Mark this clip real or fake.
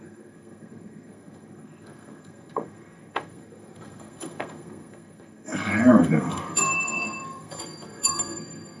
fake